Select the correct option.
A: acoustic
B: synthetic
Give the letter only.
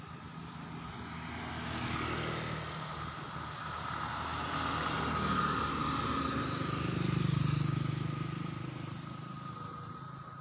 A